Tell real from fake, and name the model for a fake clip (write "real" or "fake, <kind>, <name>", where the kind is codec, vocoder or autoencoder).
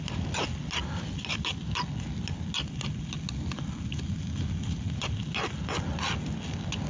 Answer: real